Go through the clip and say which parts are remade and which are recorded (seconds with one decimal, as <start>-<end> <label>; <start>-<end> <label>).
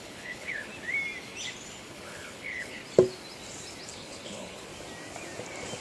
0.0-0.7 remade; 0.7-1.8 recorded; 1.8-2.8 remade; 2.8-3.9 recorded; 3.9-4.7 remade; 4.7-5.8 recorded